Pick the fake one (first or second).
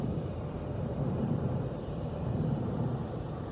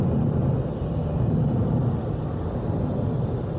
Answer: first